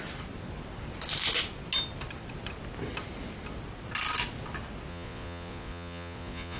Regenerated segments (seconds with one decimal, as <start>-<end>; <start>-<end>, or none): 4.9-6.6